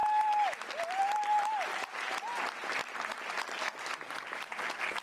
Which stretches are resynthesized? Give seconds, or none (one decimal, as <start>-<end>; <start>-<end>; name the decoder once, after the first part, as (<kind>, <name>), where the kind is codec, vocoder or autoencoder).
1.7-2.4 (vocoder, BigVGAN v2)